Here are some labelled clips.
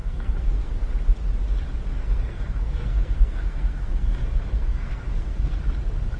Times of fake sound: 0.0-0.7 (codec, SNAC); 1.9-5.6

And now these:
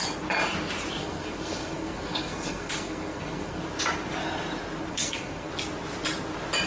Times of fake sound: 1.0-3.6 (codec, SNAC); 4.9-5.5

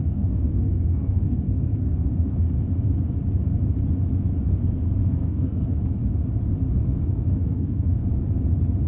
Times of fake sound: 0.0-2.5 (codec, SNAC); 5.0-5.8; 6.8-8.0

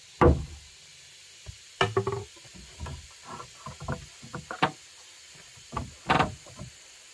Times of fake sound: none

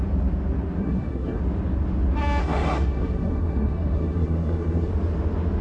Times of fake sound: 0.8-1.4 (codec, SNAC); 2.4-4.9

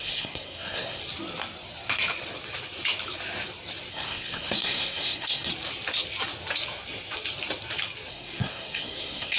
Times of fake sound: 0.0-1.0 (codec, SNAC); 3.9-5.5; 8.1-9.4

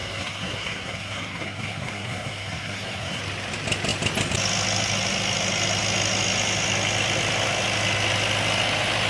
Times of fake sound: 0.0-3.2 (codec, SNAC)